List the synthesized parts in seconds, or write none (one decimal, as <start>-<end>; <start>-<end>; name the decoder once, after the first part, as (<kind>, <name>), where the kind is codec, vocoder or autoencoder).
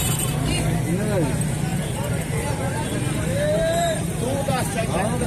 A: 1.7-5.3 (vocoder, BigVGAN v2)